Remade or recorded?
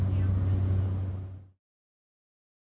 recorded